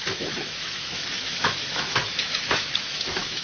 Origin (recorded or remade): remade